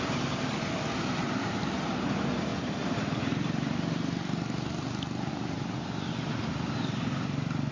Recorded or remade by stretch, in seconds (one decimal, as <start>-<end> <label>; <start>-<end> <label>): 0.0-7.7 remade